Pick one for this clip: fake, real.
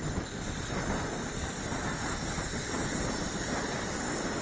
real